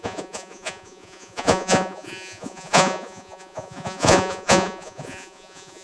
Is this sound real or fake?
fake